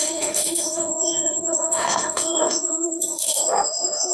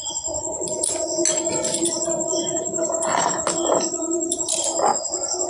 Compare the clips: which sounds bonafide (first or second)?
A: second